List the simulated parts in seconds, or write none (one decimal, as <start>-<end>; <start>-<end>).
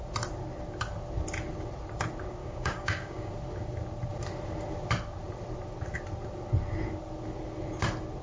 2.4-3.3